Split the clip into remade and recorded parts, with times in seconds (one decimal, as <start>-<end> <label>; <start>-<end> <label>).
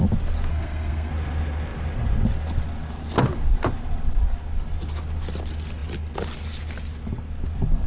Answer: 0.0-0.5 recorded; 0.5-1.1 remade; 1.1-7.9 recorded